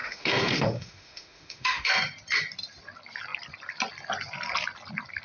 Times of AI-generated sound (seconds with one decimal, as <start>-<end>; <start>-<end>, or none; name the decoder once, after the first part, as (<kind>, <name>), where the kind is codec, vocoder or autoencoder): 0.0-1.9 (autoencoder, DAC-VAE)